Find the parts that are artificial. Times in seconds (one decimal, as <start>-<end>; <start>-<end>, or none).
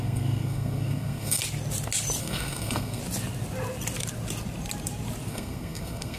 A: 0.0-1.4; 2.2-3.0; 5.3-6.2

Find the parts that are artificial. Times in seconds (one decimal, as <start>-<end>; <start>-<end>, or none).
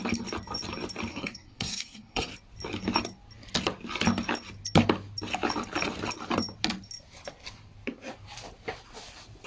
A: 1.1-2.3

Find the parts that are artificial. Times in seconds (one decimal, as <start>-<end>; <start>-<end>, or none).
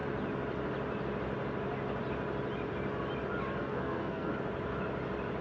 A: 3.6-4.3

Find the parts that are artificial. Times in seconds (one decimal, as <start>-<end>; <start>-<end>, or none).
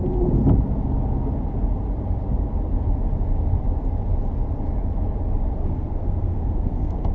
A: 5.6-7.1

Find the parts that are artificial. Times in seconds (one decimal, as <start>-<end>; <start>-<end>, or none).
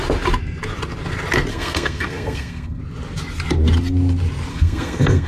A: 1.5-2.8; 4.5-5.3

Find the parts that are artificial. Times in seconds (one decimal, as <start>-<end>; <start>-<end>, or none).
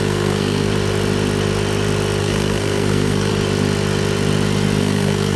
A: 0.0-0.7; 2.2-3.3; 4.8-5.4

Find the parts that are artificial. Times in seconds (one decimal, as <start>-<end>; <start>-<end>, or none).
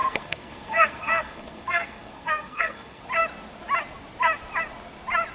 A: 0.0-3.0